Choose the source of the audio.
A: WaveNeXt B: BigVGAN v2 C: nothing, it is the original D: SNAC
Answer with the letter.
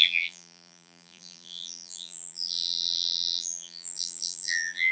B